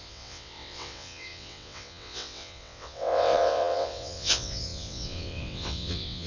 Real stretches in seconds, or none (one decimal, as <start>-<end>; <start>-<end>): none